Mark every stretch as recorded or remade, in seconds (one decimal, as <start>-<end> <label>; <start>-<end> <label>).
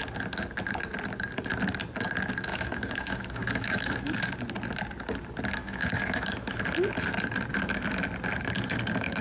0.0-2.5 recorded; 2.5-4.3 remade; 4.3-5.6 recorded; 5.6-6.6 remade; 6.6-9.2 recorded